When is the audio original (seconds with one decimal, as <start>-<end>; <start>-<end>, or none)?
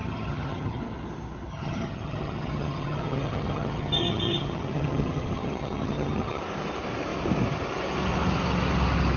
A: 0.8-1.5; 6.4-9.2